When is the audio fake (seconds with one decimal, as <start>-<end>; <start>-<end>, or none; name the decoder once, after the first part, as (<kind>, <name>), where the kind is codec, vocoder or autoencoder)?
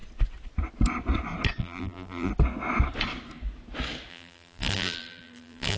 1.6-2.3 (vocoder, BigVGAN v2); 4.1-5.8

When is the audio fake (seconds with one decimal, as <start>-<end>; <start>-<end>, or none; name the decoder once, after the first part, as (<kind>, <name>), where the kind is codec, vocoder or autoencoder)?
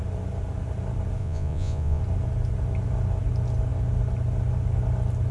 1.2-2.0 (vocoder, Vocos)